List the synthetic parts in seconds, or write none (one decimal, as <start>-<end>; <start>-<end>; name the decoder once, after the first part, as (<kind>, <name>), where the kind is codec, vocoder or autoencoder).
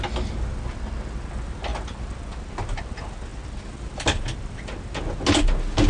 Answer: none